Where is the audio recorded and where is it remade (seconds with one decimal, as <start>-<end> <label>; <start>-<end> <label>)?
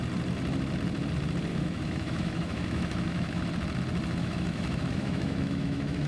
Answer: 0.0-1.5 recorded; 1.5-3.4 remade; 3.4-4.2 recorded; 4.2-6.1 remade